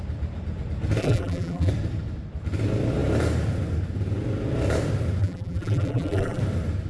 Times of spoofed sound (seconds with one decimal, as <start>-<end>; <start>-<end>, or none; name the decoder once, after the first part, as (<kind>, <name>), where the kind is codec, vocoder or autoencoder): 1.0-1.7 (vocoder, BigVGAN v2); 5.2-6.4